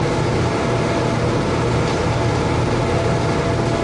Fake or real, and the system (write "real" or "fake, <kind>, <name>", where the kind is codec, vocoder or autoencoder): real